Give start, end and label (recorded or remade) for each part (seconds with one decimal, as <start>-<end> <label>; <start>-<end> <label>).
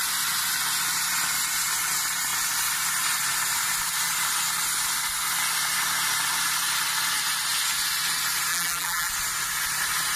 0.0-8.5 recorded; 8.5-9.1 remade; 9.1-10.2 recorded